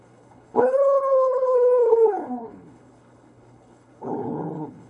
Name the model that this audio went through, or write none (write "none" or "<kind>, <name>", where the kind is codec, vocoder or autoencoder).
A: codec, HILCodec